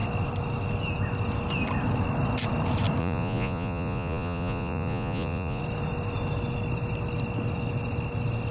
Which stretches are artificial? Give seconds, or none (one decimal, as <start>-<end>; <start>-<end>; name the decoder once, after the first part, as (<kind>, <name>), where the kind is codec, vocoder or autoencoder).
3.0-5.6 (vocoder, Vocos)